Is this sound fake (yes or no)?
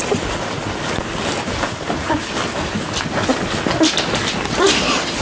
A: no